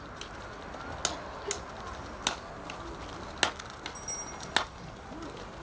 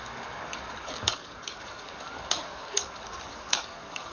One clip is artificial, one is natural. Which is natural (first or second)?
first